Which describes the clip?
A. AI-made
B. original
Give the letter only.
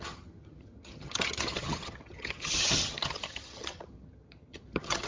A